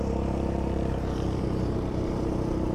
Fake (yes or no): yes